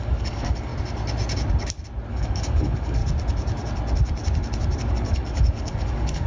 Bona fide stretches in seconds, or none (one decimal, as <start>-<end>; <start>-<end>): 0.7-2.1; 3.0-4.9